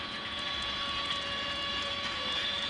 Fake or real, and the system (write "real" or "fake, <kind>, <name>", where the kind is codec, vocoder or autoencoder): fake, vocoder, Vocos